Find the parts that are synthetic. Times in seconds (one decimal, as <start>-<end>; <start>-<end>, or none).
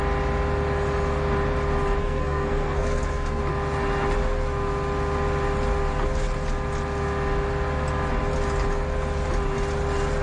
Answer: 2.0-3.4